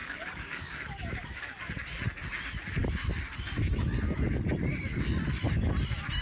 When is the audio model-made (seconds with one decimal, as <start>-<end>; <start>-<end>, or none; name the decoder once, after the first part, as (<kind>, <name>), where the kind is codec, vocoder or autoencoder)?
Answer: 0.0-1.7 (codec, DAC)